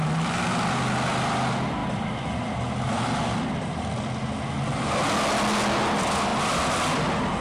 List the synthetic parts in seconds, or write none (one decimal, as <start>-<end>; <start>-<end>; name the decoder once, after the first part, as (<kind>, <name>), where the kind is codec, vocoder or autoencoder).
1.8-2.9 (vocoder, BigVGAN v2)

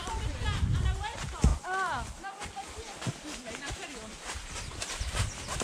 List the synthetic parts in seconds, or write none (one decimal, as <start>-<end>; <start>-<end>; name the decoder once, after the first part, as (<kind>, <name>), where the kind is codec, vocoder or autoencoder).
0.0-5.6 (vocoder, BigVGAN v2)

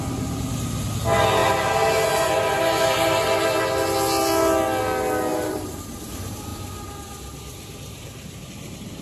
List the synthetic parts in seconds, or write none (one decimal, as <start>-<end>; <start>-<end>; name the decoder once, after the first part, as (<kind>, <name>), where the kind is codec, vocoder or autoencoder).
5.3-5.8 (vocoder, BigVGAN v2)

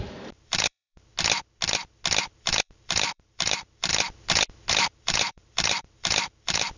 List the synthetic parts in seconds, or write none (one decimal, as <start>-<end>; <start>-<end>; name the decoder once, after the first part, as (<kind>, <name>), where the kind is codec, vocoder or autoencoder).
0.0-1.1 (vocoder, BigVGAN v2); 2.2-3.9; 4.7-6.8

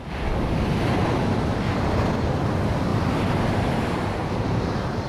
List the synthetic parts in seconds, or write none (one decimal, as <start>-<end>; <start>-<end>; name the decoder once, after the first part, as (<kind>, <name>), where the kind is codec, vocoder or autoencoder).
none